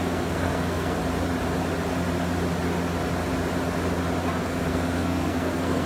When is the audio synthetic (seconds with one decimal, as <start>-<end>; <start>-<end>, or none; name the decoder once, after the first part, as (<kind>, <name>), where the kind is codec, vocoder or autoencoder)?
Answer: 0.0-1.0 (codec, SNAC); 4.4-5.9